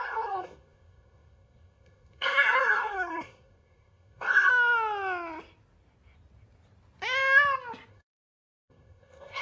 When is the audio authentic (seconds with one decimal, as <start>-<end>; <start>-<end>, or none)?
4.5-7.9